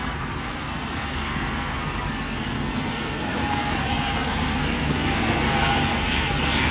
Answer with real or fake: fake